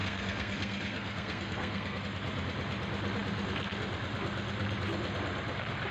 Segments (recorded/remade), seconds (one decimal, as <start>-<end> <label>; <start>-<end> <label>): 0.0-2.0 remade; 2.0-5.9 recorded